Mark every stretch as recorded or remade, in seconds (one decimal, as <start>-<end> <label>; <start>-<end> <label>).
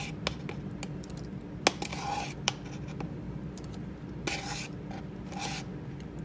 0.0-1.9 recorded; 1.9-4.2 remade; 4.2-6.2 recorded